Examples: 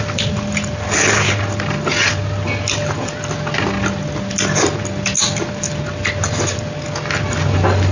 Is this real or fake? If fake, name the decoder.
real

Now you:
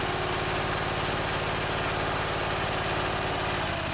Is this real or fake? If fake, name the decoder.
real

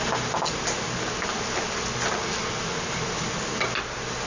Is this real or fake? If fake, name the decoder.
real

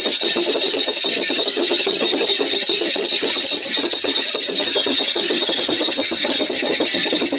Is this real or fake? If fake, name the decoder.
fake, vocoder, HiFi-GAN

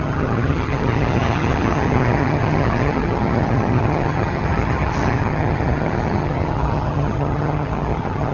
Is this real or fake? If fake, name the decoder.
fake, vocoder, HiFi-GAN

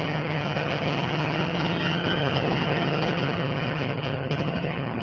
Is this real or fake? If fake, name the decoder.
fake, vocoder, HiFi-GAN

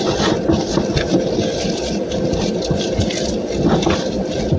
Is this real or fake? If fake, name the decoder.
real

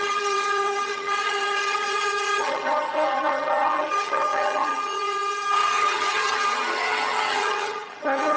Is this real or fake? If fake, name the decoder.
fake, vocoder, HiFi-GAN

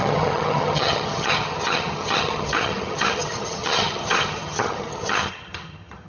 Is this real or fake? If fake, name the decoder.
fake, vocoder, HiFi-GAN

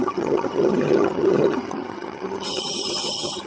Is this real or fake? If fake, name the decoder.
fake, vocoder, HiFi-GAN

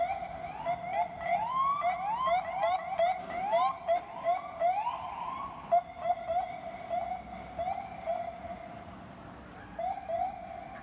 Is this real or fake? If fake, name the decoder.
real